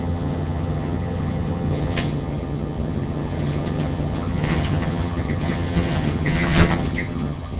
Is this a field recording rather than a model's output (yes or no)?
no